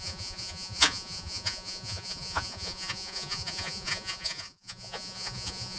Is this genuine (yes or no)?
no